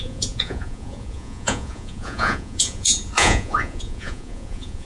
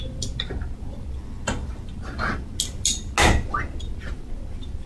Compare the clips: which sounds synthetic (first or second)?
first